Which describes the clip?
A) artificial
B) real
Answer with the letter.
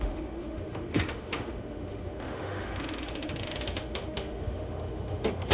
A